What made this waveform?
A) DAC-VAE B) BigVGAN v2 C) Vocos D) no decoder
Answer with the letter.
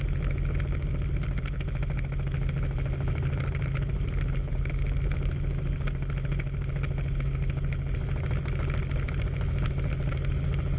D